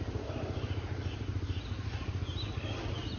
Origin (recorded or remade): recorded